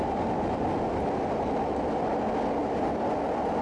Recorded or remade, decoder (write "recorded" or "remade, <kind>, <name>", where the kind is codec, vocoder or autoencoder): recorded